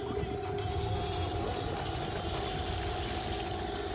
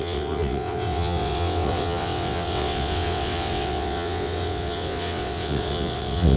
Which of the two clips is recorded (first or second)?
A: first